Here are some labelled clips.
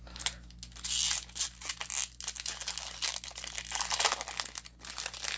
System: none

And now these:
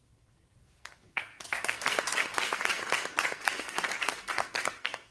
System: codec, SNAC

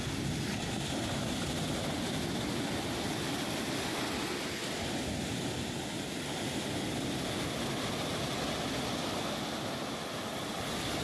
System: none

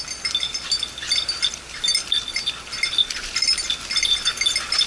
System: none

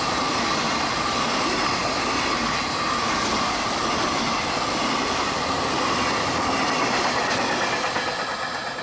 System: none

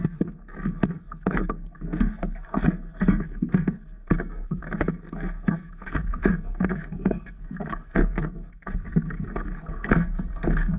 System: codec, SNAC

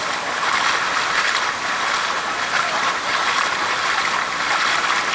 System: none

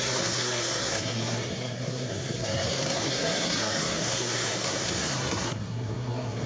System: codec, SNAC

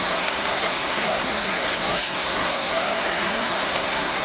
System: codec, SNAC